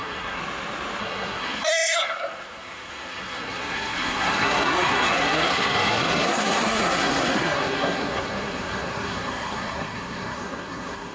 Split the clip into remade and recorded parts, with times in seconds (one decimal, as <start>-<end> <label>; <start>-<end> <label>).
0.0-0.4 remade; 0.4-1.0 recorded; 1.0-11.1 remade